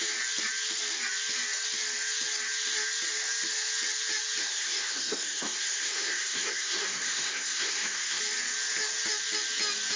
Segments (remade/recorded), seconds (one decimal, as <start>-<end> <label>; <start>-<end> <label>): 0.0-4.4 recorded; 4.4-8.2 remade; 8.2-10.0 recorded

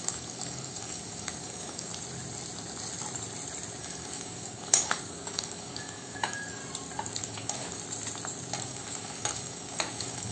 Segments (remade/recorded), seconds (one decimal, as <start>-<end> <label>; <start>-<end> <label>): 0.0-1.9 remade; 1.9-3.8 recorded; 3.8-6.6 remade; 6.6-7.2 recorded; 7.2-7.8 remade; 7.8-8.6 recorded; 8.6-10.3 remade

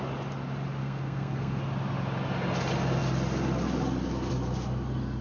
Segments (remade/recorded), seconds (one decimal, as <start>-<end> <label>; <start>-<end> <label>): 0.0-0.8 recorded; 0.8-1.6 remade; 1.6-5.2 recorded

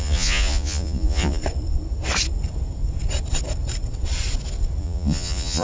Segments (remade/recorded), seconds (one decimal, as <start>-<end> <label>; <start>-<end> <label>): 0.0-1.4 remade; 1.4-4.8 recorded; 4.8-5.6 remade

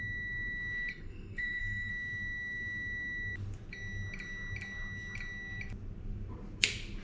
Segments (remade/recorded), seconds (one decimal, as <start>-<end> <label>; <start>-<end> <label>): 0.0-0.9 recorded; 0.9-1.9 remade; 1.9-7.0 recorded

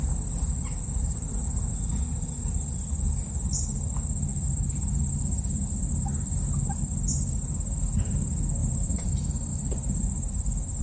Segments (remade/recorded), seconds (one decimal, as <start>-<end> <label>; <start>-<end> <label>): 0.0-8.6 recorded; 8.6-9.1 remade; 9.1-9.5 recorded; 9.5-10.8 remade

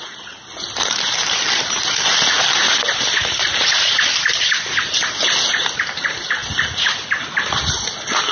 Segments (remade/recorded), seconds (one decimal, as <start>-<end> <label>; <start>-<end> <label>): 0.0-8.3 recorded

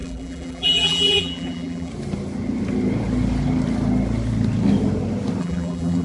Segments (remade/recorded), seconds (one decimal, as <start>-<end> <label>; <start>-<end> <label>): 0.0-1.9 remade; 1.9-5.4 recorded; 5.4-6.0 remade